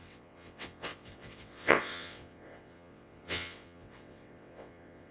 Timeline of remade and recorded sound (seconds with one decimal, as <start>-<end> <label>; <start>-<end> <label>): 0.0-5.1 remade